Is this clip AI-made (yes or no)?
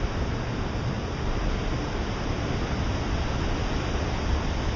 no